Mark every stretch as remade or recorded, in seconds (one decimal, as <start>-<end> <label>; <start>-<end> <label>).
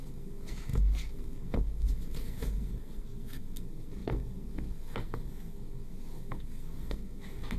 0.0-7.6 remade